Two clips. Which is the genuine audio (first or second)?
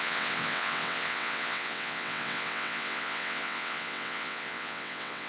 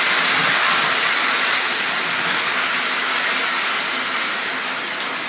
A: second